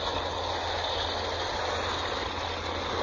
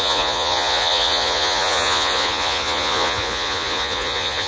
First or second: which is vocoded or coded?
second